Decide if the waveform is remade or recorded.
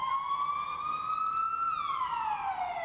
recorded